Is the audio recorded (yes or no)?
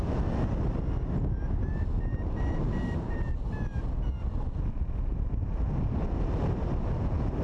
yes